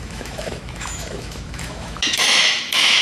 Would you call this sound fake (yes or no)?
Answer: yes